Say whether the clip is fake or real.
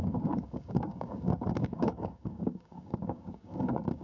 fake